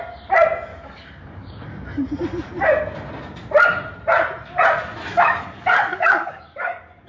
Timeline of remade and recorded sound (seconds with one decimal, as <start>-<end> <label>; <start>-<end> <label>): 0.0-0.7 recorded; 0.7-2.1 remade; 2.1-5.1 recorded; 5.1-7.1 remade